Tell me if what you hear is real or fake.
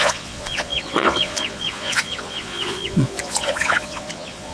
fake